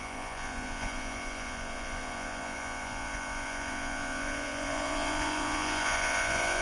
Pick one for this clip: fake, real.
fake